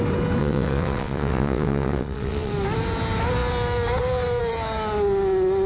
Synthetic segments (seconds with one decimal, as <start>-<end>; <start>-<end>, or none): 0.4-2.5